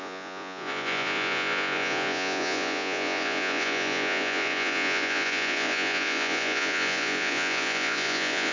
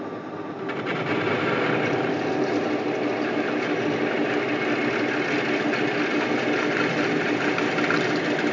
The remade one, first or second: first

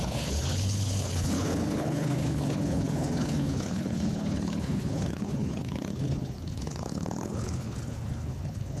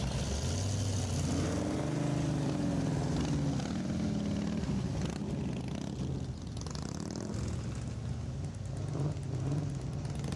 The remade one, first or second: first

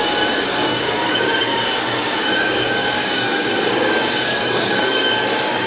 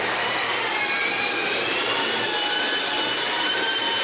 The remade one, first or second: first